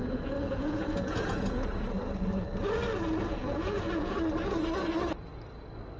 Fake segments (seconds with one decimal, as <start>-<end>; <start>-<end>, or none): 0.0-1.7; 3.3-4.1